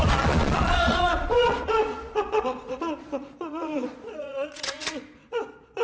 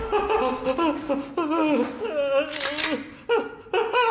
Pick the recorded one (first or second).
second